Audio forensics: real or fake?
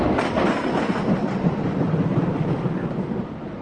real